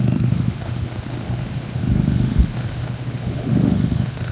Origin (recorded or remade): remade